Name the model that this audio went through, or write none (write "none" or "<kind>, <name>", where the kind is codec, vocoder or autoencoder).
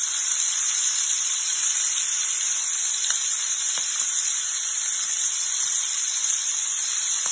vocoder, BigVGAN v2